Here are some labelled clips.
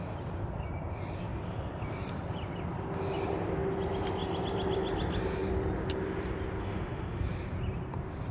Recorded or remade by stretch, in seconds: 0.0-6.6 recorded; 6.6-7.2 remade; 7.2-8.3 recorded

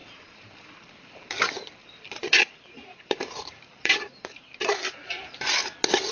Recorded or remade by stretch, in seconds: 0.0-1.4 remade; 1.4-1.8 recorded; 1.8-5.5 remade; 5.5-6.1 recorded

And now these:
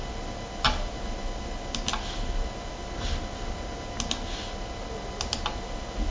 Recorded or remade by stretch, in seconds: 0.0-6.1 recorded

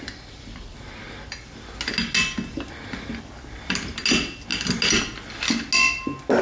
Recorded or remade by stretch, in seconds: 0.0-6.4 recorded

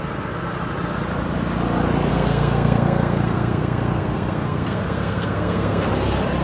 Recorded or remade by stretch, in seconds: 0.0-2.1 recorded; 2.1-5.9 remade; 5.9-6.4 recorded

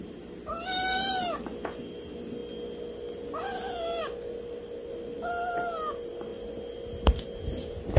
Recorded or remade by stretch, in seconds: 0.0-8.0 recorded

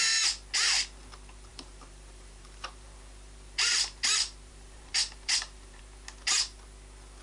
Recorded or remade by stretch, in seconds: 0.0-1.5 recorded; 1.5-5.8 remade; 5.8-7.2 recorded

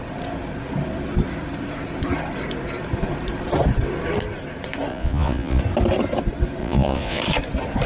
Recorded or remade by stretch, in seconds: 0.0-4.9 recorded; 4.9-5.6 remade; 5.6-6.6 recorded; 6.6-7.2 remade; 7.2-7.9 recorded